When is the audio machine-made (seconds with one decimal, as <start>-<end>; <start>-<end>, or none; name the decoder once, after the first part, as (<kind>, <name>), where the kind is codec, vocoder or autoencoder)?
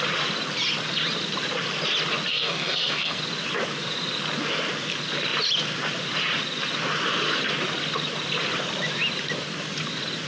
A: 2.3-3.2 (codec, SNAC)